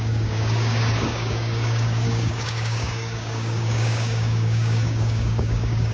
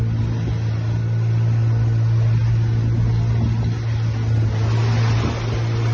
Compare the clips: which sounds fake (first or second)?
first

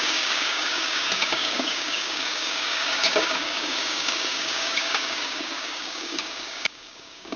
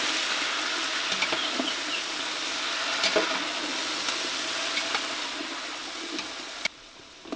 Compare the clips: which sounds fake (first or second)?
first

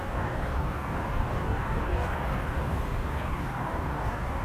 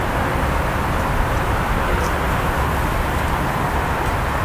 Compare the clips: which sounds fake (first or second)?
first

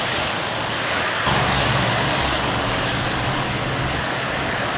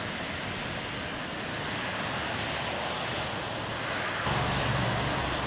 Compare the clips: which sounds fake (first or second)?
first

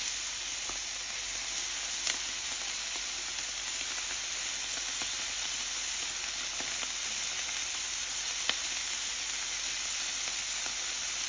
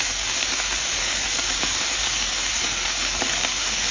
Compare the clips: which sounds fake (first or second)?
second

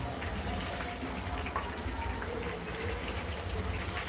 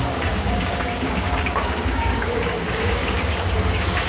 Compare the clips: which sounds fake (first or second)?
second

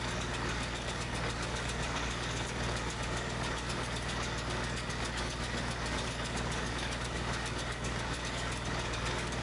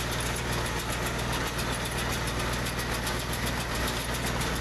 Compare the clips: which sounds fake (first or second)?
first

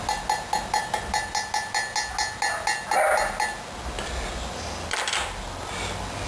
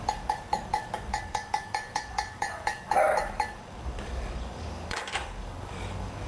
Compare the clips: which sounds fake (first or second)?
second